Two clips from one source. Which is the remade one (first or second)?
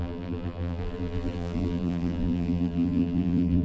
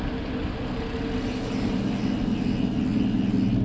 first